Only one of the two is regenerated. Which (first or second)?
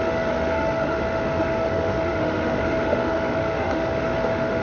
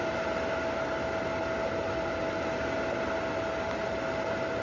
first